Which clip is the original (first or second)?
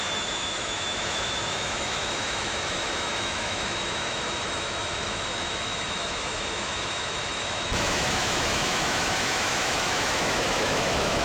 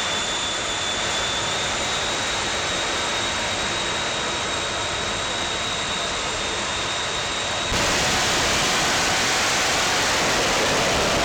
second